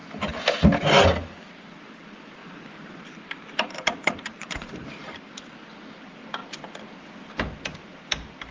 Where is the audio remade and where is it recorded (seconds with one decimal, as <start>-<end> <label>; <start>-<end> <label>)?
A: 0.0-2.4 recorded; 2.4-5.4 remade; 5.4-8.5 recorded